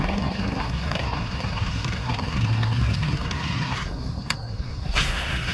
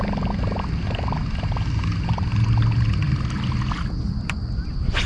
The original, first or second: second